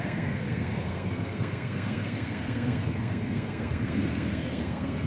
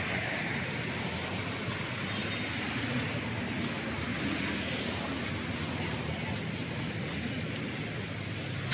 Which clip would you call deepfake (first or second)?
first